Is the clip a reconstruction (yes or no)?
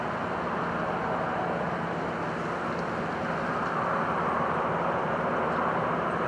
no